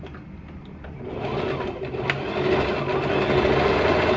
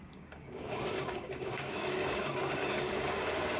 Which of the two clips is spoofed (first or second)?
second